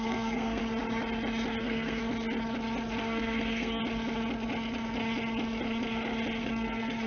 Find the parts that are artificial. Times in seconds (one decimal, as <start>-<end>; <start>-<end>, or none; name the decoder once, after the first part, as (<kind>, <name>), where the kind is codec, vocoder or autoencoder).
0.0-0.6 (codec, SNAC); 1.6-2.0; 3.0-3.8; 6.4-7.1